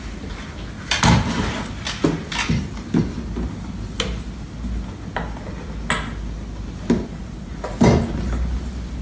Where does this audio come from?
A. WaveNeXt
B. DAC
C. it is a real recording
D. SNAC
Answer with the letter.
C